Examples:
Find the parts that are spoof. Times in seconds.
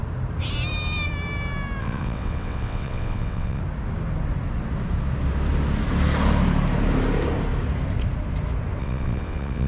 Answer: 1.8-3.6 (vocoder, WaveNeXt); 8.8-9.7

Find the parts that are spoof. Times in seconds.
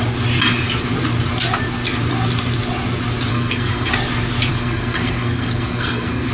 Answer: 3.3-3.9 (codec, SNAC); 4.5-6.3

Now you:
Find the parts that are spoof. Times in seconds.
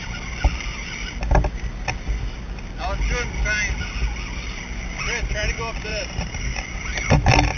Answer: 5.9-6.6 (vocoder, BigVGAN v2)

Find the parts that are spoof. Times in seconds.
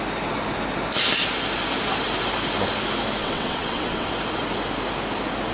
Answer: 3.2-4.1 (vocoder, WaveNeXt)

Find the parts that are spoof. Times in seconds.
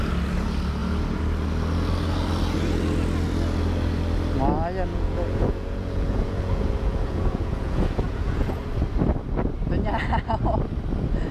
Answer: 4.9-8.7 (vocoder, Vocos)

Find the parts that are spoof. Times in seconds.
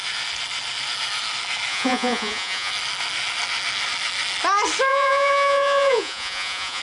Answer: 1.7-2.7 (vocoder, Vocos); 4.9-6.8